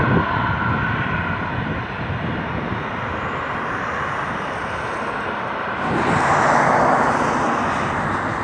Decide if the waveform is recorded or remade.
recorded